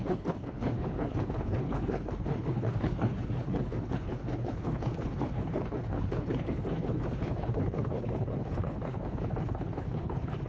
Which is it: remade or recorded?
remade